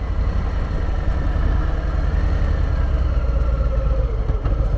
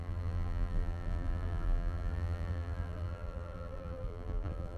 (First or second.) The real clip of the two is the first